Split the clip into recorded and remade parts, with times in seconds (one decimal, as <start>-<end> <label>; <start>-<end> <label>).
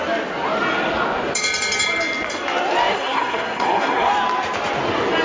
0.0-2.9 recorded; 2.9-4.1 remade; 4.1-5.2 recorded